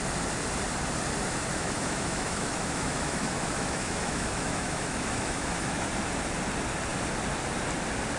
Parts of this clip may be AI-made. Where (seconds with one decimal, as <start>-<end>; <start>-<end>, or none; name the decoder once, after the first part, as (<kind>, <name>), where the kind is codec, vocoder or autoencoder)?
1.5-5.9 (autoencoder, DAC-VAE)